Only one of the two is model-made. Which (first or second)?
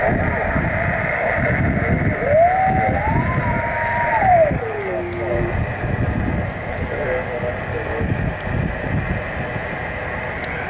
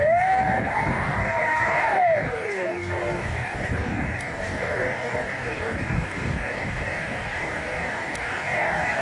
second